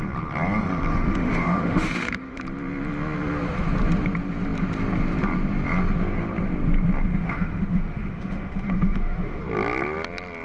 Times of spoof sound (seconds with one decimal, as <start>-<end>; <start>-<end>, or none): 0.9-2.4; 7.1-9.4